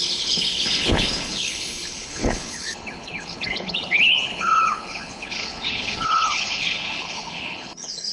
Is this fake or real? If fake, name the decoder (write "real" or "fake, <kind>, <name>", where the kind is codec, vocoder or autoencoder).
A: fake, codec, HILCodec